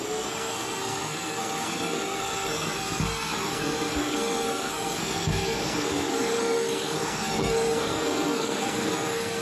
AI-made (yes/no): yes